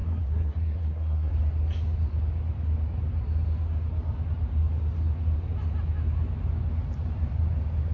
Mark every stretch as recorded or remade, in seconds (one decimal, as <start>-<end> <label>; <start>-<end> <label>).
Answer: 0.0-1.3 remade; 1.3-7.9 recorded